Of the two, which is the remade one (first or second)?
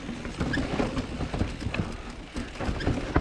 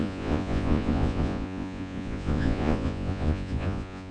second